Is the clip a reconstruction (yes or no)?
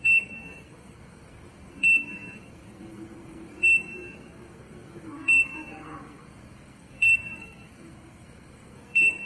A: yes